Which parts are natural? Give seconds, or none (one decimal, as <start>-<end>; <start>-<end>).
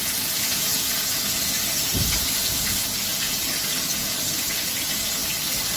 5.2-5.8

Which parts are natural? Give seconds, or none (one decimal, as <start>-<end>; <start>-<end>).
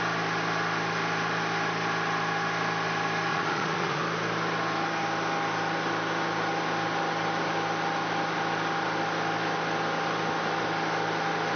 0.0-3.3; 4.0-11.6